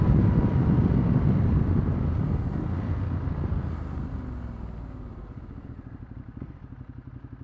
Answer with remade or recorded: recorded